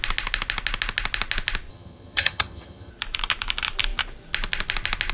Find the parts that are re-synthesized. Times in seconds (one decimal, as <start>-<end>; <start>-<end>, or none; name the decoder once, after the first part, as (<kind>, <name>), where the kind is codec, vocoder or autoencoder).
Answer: 1.7-2.9 (vocoder, HiFi-GAN)